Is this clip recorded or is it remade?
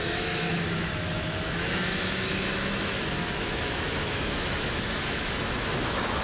remade